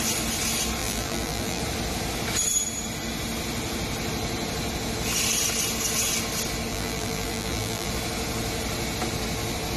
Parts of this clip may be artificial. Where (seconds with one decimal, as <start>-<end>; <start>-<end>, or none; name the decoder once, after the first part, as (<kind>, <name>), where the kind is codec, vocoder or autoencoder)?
0.8-1.6 (vocoder, BigVGAN v2); 6.7-7.9